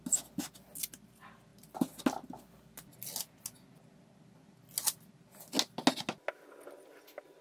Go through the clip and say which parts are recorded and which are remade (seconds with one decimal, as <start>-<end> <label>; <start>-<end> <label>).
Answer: 0.0-7.4 recorded